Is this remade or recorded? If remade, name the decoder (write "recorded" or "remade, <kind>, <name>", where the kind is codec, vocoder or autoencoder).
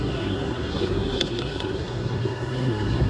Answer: remade, codec, SNAC